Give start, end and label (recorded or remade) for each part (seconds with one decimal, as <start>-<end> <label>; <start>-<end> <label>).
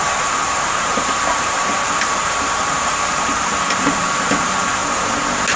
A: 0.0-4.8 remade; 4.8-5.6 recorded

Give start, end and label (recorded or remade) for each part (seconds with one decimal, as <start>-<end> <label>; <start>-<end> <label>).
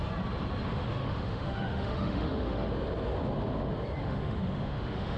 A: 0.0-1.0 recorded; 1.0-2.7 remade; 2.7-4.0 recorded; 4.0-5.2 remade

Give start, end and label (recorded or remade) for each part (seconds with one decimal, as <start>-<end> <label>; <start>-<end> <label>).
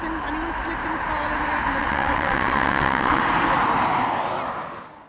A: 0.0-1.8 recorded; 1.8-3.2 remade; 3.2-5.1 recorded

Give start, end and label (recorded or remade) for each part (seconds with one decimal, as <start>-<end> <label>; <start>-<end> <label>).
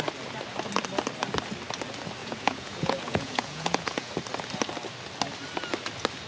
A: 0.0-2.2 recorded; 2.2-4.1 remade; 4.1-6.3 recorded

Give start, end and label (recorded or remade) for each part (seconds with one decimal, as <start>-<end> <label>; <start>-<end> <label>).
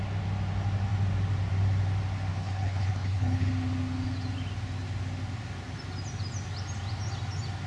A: 0.0-2.3 recorded; 2.3-3.5 remade; 3.5-7.7 recorded